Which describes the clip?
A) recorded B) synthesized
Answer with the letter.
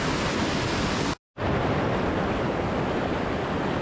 A